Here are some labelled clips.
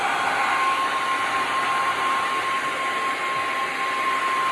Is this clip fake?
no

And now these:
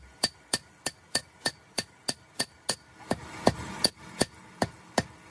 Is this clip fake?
no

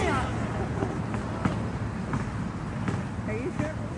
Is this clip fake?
no